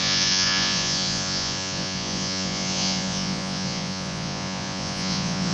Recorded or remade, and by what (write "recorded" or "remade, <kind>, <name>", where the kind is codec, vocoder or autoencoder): remade, vocoder, Vocos